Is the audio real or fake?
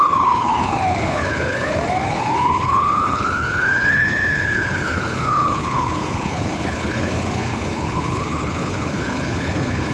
fake